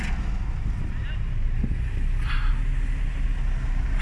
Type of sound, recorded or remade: recorded